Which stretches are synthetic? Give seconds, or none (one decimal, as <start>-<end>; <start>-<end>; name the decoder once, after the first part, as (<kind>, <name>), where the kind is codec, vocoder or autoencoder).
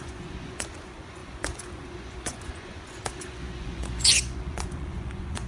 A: 0.0-5.5 (vocoder, Vocos)